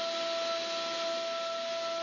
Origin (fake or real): real